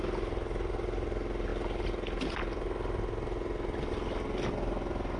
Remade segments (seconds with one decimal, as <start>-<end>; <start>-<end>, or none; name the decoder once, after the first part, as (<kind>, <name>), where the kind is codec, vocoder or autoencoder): none

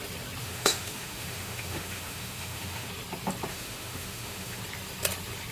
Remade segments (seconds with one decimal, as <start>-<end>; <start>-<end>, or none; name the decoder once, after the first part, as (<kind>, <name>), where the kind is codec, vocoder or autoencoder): 0.4-2.9 (autoencoder, DAC-VAE); 3.5-4.6

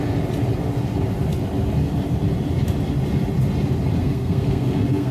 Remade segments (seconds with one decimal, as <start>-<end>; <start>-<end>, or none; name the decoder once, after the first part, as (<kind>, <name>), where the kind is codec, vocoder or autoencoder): 4.0-5.1 (codec, SNAC)

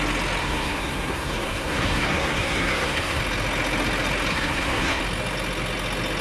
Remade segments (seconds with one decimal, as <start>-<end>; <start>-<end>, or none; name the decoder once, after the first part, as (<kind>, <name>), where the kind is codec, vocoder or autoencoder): 0.4-3.2 (codec, SNAC); 4.3-5.0

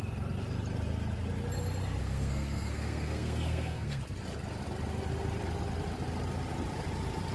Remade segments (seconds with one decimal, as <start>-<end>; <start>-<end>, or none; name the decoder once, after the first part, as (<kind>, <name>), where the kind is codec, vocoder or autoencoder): 2.0-4.0 (codec, SNAC)

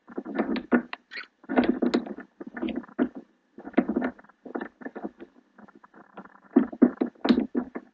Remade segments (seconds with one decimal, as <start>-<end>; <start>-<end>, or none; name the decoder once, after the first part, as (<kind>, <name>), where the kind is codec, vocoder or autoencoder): none

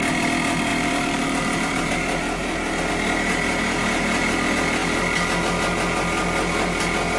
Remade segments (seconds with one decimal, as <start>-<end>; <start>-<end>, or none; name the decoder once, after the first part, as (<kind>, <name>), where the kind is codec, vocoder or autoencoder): 0.7-2.9 (vocoder, BigVGAN v2)

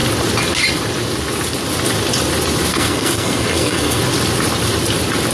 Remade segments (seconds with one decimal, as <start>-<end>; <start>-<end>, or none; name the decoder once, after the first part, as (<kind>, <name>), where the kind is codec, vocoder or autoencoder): 2.7-4.0 (codec, SNAC)